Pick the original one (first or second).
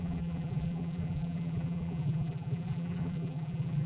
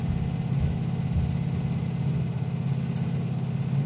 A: second